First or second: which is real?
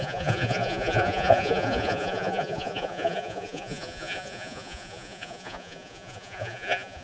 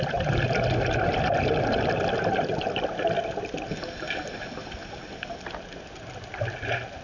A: second